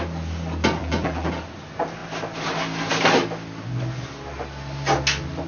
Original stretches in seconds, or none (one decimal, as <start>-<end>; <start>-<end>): 0.0-0.8; 1.3-5.5